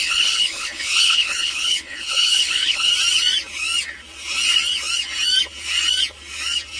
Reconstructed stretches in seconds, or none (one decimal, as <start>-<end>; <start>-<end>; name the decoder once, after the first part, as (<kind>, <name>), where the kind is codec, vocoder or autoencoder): 0.0-2.9 (codec, HILCodec)